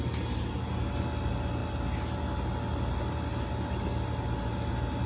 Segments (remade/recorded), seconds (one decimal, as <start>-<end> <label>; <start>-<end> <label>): 0.0-5.1 recorded